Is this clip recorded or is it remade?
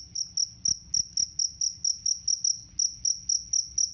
recorded